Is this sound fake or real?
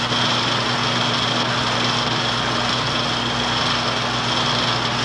real